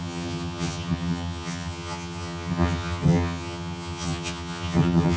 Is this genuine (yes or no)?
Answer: no